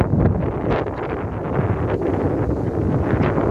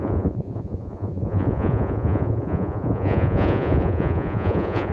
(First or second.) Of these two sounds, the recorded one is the first